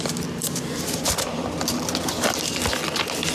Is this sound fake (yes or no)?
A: no